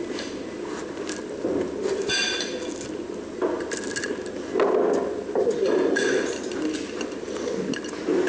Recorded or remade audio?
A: recorded